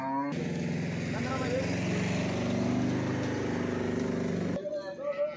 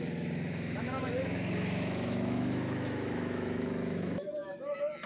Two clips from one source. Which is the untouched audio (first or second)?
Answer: first